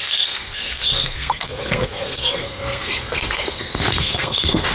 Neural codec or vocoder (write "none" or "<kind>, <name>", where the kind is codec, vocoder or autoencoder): codec, SNAC